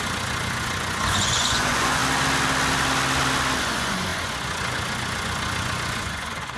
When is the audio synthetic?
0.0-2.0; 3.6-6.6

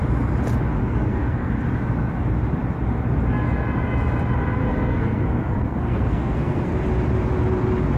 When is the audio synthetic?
0.8-1.5; 4.7-6.7

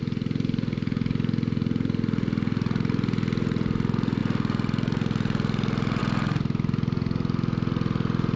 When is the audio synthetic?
none

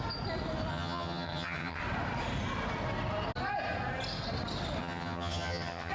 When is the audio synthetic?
0.7-1.8; 4.8-5.9